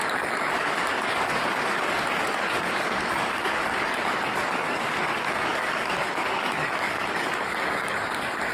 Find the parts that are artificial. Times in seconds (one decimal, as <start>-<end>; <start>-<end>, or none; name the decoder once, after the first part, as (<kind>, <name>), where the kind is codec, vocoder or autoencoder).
0.0-8.5 (codec, DAC)